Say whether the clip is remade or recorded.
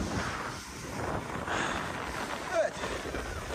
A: recorded